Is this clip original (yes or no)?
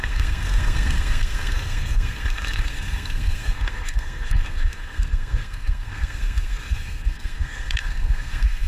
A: no